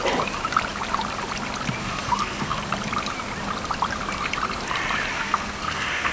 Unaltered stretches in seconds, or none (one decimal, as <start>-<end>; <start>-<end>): 0.0-1.8; 2.6-5.1